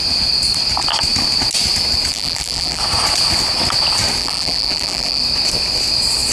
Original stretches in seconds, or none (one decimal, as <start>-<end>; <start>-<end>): 0.0-2.1; 2.8-4.2; 5.2-6.3